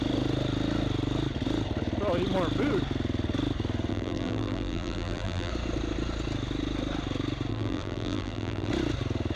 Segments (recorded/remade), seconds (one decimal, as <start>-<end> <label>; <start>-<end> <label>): 0.0-3.9 recorded; 3.9-5.5 remade; 5.5-7.5 recorded; 7.5-8.7 remade; 8.7-9.4 recorded